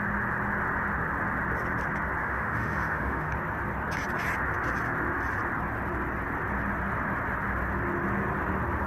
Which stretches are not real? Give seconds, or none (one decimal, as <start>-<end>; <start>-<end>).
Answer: 2.2-3.3